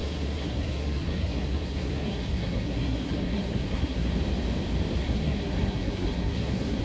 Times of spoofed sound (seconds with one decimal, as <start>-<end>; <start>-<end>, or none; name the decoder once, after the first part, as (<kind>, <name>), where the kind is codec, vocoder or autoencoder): 0.0-4.1 (codec, SNAC); 5.0-6.8